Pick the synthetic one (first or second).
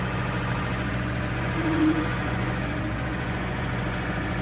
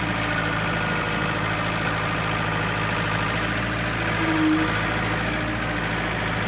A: first